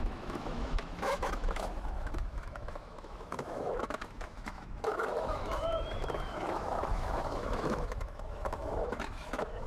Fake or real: fake